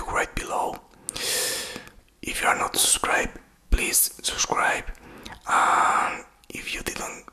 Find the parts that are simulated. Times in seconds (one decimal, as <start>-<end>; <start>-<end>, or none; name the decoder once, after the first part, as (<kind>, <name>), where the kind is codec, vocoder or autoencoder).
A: 2.8-5.2 (autoencoder, DAC-VAE)